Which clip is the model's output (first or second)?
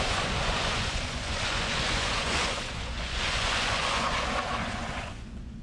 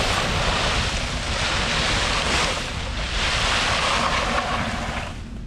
first